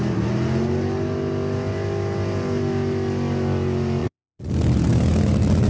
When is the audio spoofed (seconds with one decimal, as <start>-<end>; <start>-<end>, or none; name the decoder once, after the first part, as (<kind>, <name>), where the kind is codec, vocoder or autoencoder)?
4.0-4.5 (vocoder, Vocos)